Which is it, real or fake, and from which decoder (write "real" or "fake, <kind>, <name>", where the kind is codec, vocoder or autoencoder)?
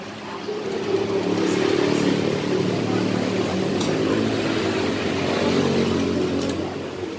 real